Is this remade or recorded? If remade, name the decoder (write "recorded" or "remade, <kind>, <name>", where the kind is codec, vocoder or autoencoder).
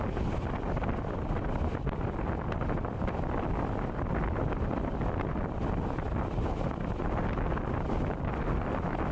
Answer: recorded